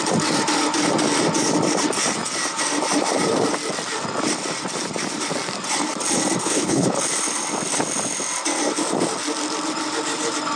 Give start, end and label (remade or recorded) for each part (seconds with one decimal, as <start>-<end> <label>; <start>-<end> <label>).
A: 0.0-6.4 recorded; 6.4-7.0 remade; 7.0-10.6 recorded

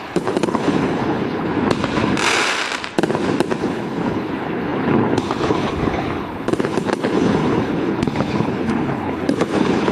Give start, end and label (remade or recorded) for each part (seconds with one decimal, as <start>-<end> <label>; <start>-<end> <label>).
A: 0.0-1.5 remade; 1.5-3.6 recorded; 3.6-9.9 remade

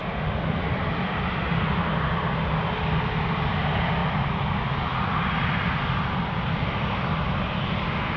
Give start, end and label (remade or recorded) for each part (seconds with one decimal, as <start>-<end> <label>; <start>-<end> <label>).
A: 0.0-1.9 remade; 1.9-4.0 recorded; 4.0-4.5 remade; 4.5-4.9 recorded; 4.9-5.8 remade; 5.8-8.2 recorded